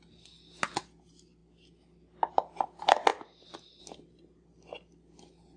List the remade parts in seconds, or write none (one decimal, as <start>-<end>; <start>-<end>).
none